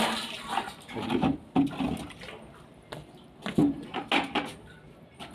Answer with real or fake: real